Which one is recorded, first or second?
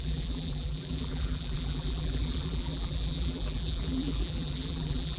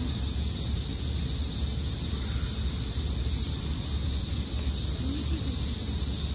second